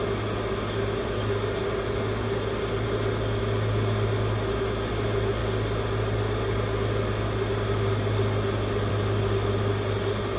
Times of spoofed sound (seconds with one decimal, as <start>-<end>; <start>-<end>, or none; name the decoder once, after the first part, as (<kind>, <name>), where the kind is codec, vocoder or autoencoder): none